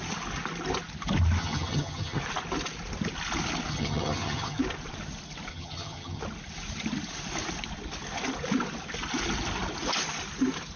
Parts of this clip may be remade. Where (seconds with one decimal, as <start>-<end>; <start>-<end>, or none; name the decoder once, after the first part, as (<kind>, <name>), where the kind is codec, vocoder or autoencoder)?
1.4-2.2 (vocoder, HiFi-GAN); 3.7-4.6; 5.5-6.2